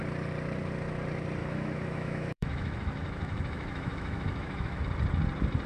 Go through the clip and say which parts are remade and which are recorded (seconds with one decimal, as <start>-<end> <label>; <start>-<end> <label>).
0.0-1.4 recorded; 1.4-4.8 remade; 4.8-5.7 recorded